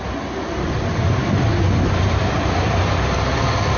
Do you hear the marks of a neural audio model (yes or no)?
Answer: no